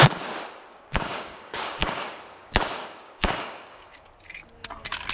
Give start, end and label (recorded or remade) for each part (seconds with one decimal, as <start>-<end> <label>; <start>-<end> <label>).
0.0-0.7 recorded; 0.7-2.2 remade; 2.2-2.8 recorded; 2.8-4.1 remade; 4.1-5.1 recorded

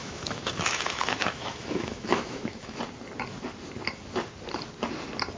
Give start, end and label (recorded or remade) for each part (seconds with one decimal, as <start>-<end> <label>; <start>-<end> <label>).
0.0-2.8 remade; 2.8-5.4 recorded

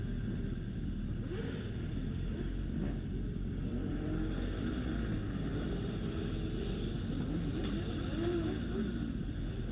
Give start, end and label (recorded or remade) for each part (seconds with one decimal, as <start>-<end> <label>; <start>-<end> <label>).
0.0-9.7 recorded

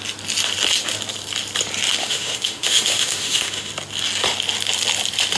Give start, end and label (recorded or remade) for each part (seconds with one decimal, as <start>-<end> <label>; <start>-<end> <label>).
0.0-2.0 recorded; 2.0-3.7 remade; 3.7-5.4 recorded

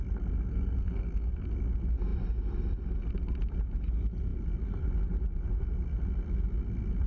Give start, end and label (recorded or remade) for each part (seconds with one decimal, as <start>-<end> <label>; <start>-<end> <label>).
0.0-0.5 recorded; 0.5-1.3 remade; 1.3-7.1 recorded

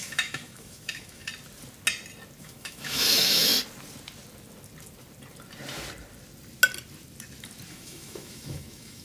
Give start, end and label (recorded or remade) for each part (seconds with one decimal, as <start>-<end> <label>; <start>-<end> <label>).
0.0-1.3 remade; 1.3-2.4 recorded; 2.4-3.5 remade; 3.5-7.7 recorded; 7.7-9.0 remade